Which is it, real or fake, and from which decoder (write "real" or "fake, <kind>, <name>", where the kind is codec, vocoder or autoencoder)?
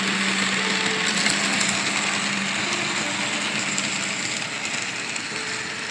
real